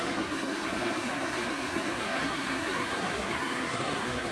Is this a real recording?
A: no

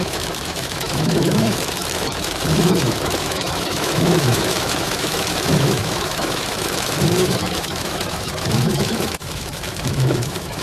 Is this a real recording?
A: no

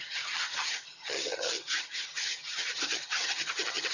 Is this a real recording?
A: no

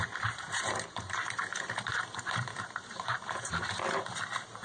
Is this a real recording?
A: no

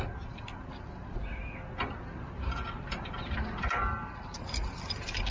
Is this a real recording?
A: yes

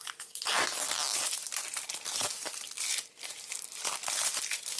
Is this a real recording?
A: yes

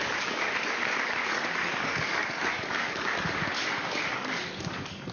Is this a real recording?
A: no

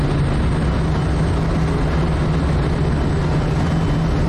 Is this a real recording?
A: yes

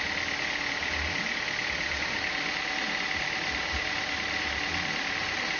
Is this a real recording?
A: yes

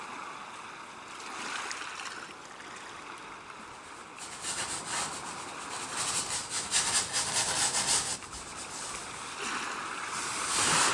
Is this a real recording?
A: yes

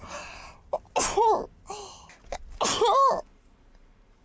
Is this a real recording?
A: yes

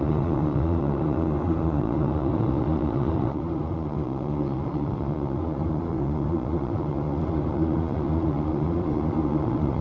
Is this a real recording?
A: no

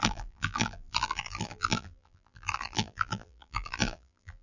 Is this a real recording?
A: no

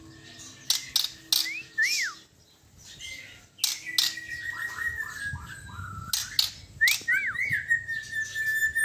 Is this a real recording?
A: yes